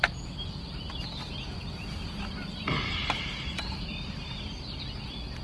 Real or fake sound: fake